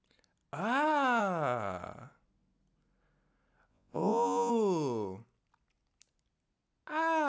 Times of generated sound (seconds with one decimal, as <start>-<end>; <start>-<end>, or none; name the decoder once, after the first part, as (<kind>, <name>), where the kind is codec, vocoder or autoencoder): 3.7-4.5 (vocoder, Vocos)